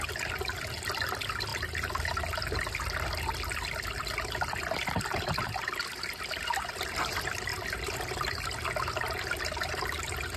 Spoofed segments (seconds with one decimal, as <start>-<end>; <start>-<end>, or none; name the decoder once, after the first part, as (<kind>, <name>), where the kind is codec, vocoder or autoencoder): none